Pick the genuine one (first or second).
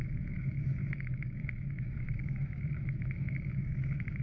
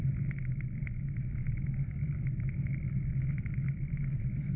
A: second